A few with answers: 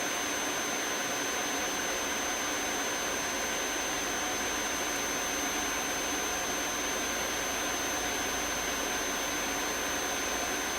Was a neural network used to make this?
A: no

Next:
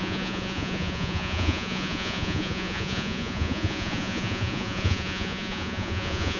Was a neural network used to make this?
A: yes